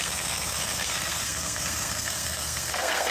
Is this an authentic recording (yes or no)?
no